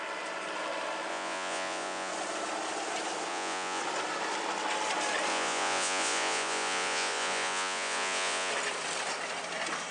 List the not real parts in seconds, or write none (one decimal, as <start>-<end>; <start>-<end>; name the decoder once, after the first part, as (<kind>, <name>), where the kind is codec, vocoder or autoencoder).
1.1-2.1 (vocoder, Vocos); 3.3-3.8; 5.3-8.5